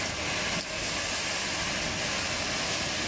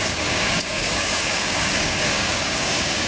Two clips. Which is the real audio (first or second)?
first